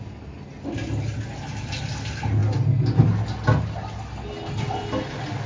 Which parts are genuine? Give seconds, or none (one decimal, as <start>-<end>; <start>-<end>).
0.0-5.5

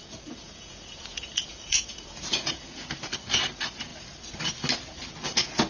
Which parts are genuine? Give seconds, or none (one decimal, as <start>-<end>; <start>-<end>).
2.9-5.7

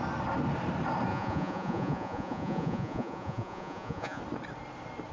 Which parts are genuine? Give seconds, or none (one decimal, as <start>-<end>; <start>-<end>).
0.0-1.1; 4.2-5.1

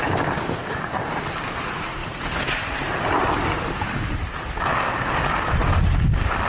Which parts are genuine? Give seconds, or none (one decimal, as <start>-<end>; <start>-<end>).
0.0-6.5

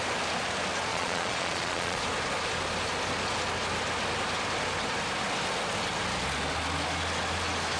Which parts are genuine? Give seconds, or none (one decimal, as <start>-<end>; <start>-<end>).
0.0-0.9; 2.0-7.8

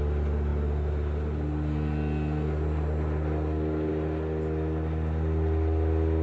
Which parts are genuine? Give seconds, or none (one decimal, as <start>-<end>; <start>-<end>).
0.0-6.2

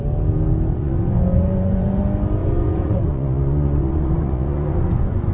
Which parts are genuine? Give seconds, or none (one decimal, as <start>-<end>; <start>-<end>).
0.0-0.7; 2.0-2.4

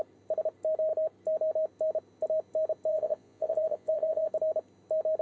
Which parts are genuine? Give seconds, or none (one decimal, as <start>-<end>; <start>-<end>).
0.0-2.9; 4.3-5.2